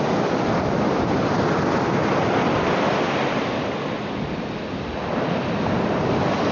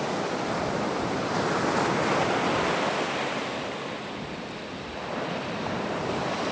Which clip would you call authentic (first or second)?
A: first